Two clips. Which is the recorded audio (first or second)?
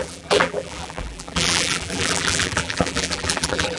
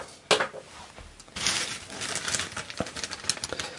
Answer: second